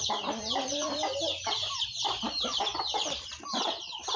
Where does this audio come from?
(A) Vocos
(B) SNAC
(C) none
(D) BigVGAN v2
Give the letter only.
D